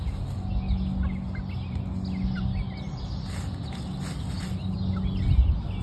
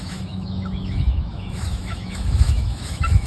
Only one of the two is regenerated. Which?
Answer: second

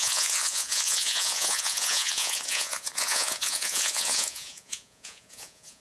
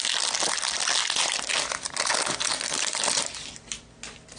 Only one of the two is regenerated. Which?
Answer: first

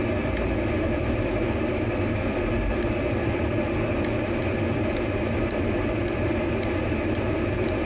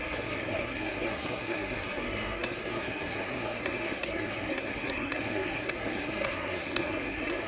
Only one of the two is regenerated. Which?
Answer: second